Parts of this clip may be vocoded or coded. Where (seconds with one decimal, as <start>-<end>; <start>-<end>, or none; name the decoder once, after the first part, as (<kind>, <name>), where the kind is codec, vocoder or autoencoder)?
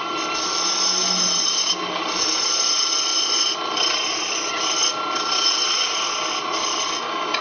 none